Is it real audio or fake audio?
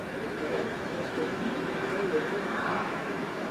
fake